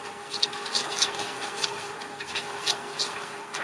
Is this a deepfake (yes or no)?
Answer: yes